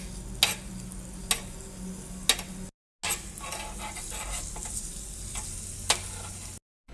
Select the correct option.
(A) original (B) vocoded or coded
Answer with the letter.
A